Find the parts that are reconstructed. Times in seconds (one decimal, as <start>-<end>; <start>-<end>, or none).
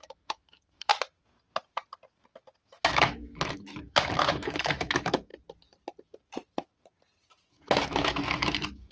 0.0-0.9; 2.8-5.3; 7.5-8.9